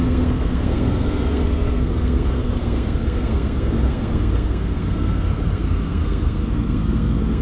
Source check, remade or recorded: remade